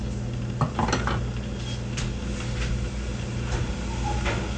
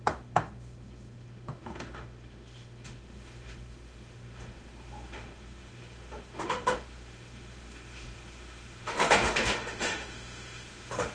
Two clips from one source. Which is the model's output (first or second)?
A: second